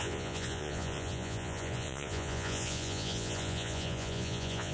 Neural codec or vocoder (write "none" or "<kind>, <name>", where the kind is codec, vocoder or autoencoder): vocoder, Vocos